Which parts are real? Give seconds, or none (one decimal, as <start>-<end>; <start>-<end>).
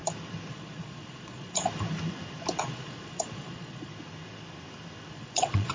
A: 0.0-0.5; 1.6-2.6; 3.9-5.1